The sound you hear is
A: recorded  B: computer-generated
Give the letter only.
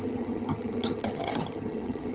B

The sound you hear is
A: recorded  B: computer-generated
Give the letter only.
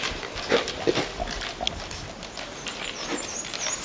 A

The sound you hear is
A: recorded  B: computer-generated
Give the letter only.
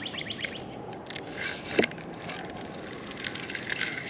A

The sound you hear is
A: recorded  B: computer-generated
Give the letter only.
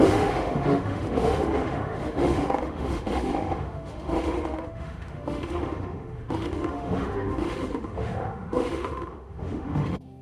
B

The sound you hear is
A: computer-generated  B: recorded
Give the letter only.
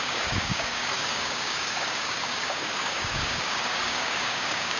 A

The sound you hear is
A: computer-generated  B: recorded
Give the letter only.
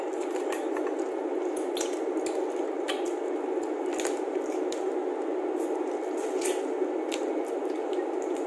B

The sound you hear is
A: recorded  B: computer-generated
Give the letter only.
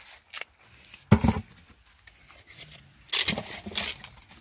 A